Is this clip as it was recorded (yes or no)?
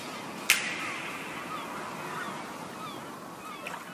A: yes